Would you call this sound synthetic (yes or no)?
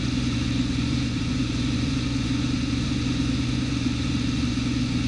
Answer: yes